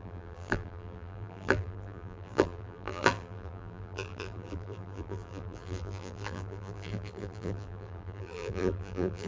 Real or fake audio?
fake